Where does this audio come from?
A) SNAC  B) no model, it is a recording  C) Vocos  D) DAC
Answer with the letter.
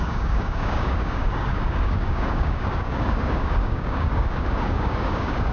D